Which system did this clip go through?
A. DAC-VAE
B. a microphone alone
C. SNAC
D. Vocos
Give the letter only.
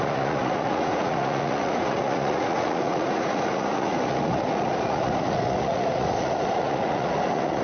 D